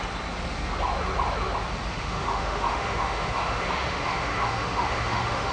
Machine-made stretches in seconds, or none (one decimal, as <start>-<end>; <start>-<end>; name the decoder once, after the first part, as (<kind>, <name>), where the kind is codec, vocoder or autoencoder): 1.9-5.5 (autoencoder, DAC-VAE)